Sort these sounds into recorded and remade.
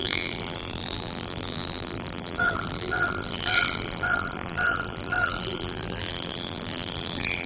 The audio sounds remade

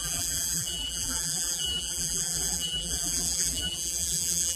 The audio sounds remade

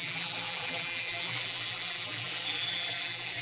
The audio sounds remade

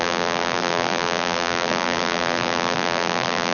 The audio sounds remade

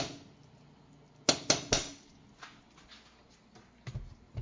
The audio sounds recorded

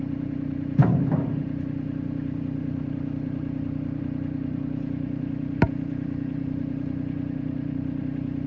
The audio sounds remade